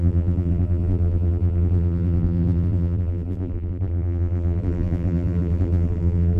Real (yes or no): no